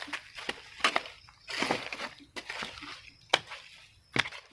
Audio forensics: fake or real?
real